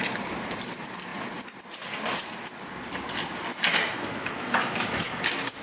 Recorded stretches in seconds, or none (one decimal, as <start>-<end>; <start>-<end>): 0.0-3.5